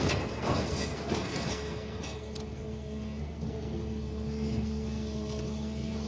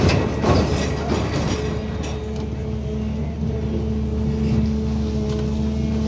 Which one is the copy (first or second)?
first